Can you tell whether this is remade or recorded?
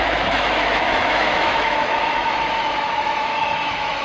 remade